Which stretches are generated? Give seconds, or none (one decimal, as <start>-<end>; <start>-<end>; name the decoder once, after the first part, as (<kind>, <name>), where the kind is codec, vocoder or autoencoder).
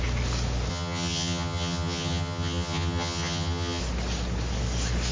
0.7-3.8 (vocoder, HiFi-GAN)